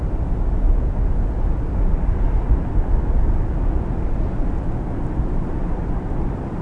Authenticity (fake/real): real